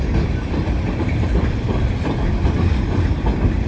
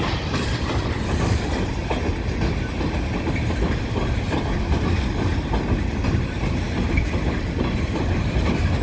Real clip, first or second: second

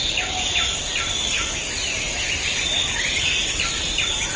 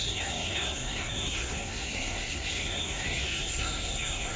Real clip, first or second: first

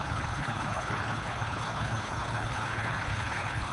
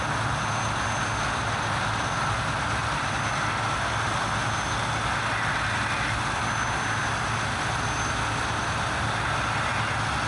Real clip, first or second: second